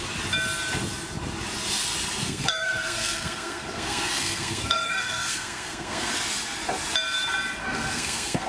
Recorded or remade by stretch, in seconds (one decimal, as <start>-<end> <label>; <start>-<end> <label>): 0.0-2.2 recorded; 2.2-6.1 remade; 6.1-7.6 recorded; 7.6-8.5 remade